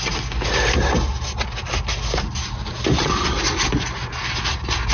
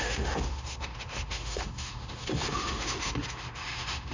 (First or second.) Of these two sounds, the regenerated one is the second